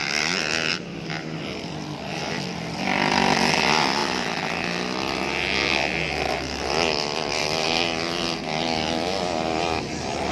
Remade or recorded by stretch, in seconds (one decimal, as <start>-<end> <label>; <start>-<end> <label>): 0.0-10.3 recorded